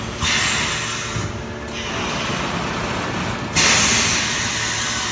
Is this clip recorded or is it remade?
recorded